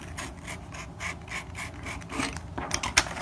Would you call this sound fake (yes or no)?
no